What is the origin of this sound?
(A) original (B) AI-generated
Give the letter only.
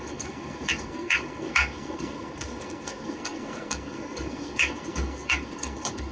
B